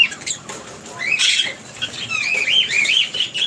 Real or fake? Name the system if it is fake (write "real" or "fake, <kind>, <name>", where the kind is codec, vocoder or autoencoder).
real